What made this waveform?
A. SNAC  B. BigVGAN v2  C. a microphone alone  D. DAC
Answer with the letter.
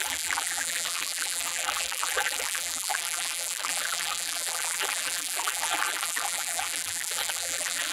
B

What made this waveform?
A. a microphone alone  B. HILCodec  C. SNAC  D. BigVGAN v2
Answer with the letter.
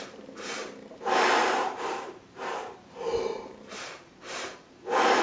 D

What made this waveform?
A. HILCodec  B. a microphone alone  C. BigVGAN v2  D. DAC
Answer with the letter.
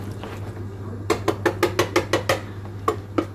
B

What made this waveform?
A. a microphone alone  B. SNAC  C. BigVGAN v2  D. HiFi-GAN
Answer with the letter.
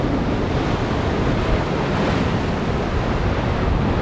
A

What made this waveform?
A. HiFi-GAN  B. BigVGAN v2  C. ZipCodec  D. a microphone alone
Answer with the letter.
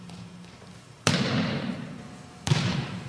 B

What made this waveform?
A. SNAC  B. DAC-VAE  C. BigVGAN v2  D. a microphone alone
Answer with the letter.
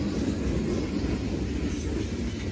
D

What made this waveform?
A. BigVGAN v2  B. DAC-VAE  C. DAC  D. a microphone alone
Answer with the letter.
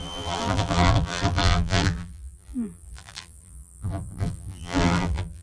A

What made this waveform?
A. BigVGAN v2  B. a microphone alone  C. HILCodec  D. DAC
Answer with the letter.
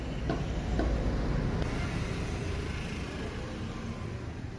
B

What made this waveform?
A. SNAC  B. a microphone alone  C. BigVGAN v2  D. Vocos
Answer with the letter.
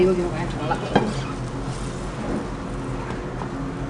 B